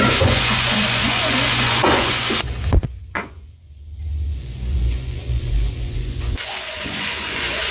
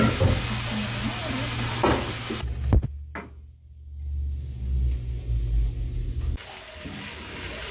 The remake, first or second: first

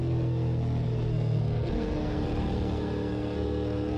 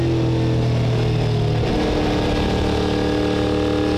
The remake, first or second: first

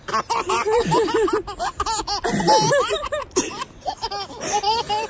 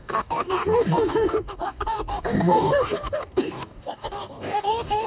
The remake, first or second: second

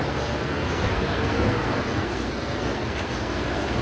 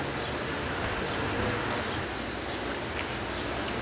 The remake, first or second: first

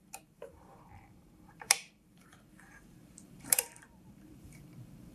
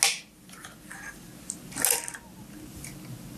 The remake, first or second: first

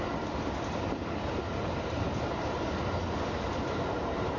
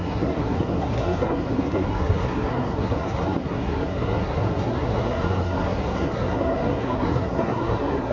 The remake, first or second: second